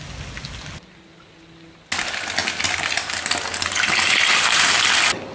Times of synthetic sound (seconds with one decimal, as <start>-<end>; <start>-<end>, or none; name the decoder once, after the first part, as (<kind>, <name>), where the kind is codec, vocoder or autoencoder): none